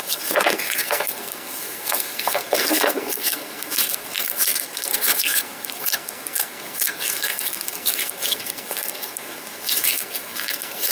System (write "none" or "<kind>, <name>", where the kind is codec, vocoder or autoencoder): codec, SNAC